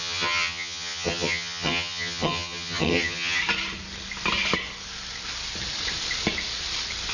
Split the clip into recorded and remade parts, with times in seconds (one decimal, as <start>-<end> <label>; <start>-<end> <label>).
0.0-3.4 remade; 3.4-7.1 recorded